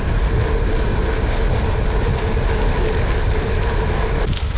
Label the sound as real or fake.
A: real